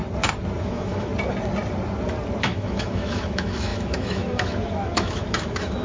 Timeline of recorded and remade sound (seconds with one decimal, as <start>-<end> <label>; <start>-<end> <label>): 0.0-0.6 recorded; 0.6-1.1 remade; 1.1-2.4 recorded; 2.4-5.8 remade